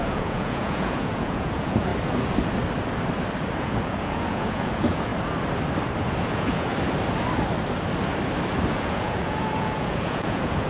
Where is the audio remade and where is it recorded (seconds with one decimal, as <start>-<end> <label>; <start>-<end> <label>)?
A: 0.0-1.9 remade; 1.9-3.6 recorded; 3.6-5.1 remade; 5.1-6.2 recorded; 6.2-6.7 remade; 6.7-8.7 recorded; 8.7-10.7 remade